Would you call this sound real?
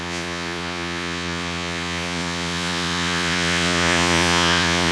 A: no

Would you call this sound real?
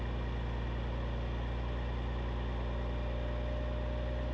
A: yes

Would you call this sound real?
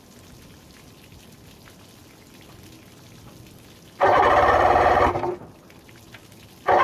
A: yes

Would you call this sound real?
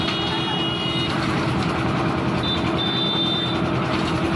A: yes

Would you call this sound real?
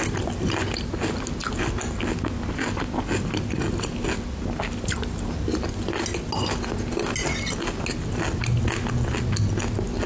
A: yes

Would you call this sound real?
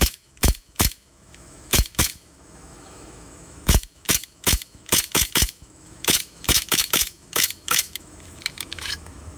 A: no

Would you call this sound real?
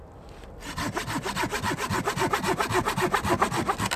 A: yes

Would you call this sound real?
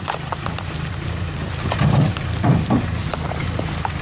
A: yes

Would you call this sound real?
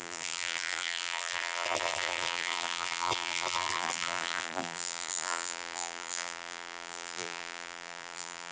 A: no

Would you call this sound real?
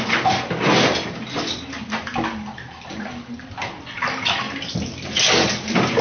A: yes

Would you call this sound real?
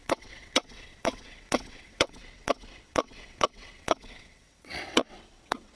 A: no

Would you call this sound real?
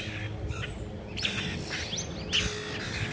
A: yes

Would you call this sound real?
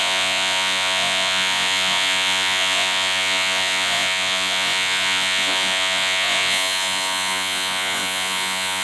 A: no